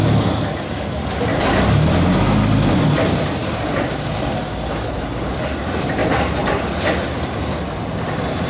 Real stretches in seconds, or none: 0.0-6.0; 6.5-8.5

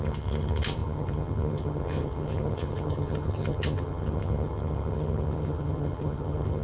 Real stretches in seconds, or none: none

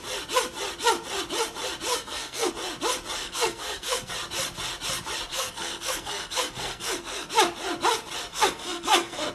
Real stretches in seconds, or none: 0.0-1.9; 2.5-3.2; 4.1-5.3; 7.3-8.3

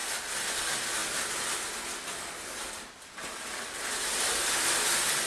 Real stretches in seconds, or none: 0.0-5.3

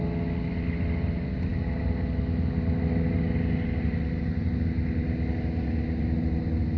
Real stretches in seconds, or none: 0.0-6.8